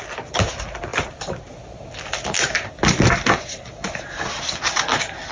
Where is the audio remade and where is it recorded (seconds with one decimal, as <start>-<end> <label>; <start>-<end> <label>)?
0.0-5.3 recorded